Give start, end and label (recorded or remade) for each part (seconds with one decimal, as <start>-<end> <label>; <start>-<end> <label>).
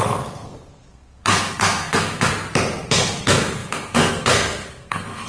0.0-2.3 remade; 2.3-2.9 recorded; 2.9-5.3 remade